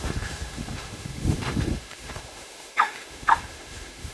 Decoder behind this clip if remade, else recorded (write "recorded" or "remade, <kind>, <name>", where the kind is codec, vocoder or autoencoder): remade, autoencoder, DAC-VAE